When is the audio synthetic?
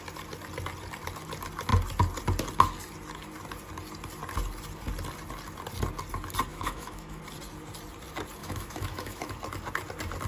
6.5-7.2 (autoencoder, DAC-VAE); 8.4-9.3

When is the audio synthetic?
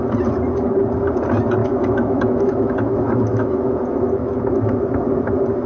1.6-5.0 (autoencoder, DAC-VAE)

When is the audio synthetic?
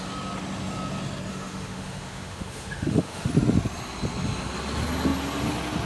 1.3-3.3 (autoencoder, DAC-VAE)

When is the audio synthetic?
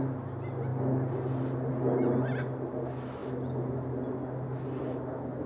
none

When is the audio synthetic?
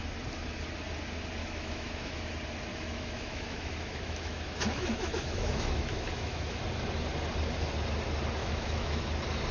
1.4-2.3 (autoencoder, DAC-VAE); 2.7-6.6; 8.4-9.0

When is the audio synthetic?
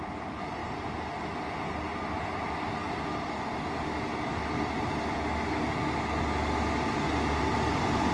none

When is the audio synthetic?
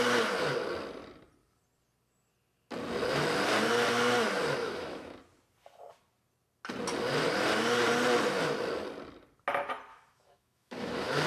4.6-5.2 (autoencoder, DAC-VAE); 9.9-11.3